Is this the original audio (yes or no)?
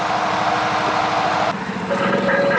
yes